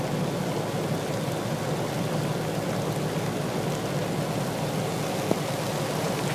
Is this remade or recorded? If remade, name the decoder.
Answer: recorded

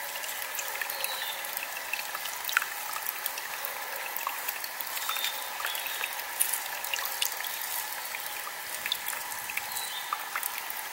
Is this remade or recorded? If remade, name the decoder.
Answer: recorded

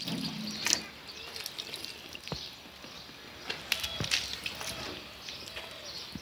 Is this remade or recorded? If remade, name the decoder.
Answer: recorded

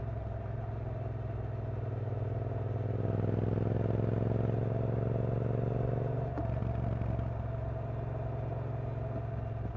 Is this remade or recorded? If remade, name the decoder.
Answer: recorded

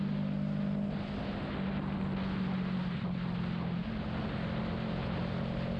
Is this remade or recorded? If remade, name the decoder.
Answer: recorded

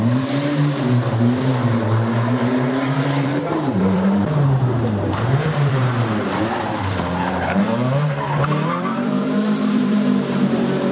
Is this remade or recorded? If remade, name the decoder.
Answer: remade, vocoder, BigVGAN v2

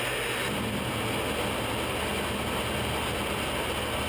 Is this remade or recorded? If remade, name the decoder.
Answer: recorded